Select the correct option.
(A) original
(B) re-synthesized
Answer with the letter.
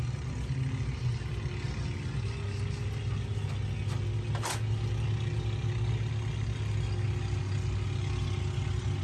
A